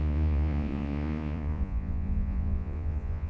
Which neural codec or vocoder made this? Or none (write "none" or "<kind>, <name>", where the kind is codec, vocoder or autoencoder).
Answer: vocoder, Vocos